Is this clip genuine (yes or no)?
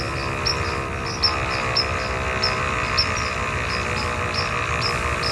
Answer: yes